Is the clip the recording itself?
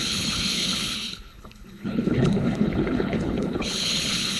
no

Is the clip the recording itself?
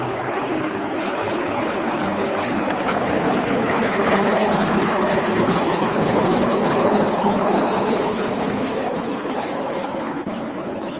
no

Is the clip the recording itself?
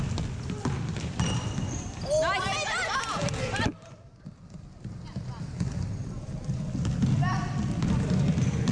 yes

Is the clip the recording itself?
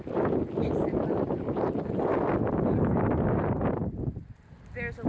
yes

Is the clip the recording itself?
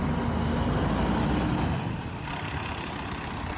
yes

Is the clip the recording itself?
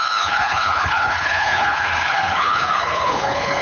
no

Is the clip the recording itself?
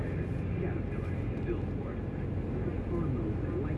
yes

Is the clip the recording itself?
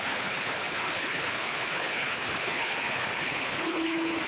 no